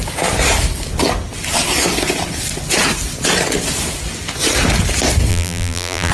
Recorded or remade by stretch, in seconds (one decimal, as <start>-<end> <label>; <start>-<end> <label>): 0.0-5.3 recorded; 5.3-6.1 remade